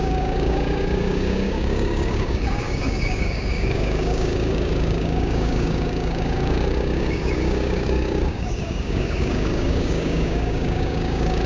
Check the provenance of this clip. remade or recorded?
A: remade